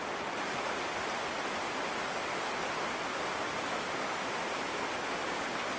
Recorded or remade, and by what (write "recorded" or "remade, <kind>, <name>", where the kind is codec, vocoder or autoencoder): recorded